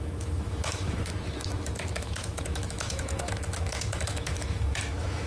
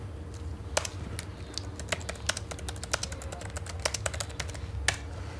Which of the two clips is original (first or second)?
second